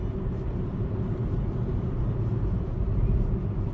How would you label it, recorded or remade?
recorded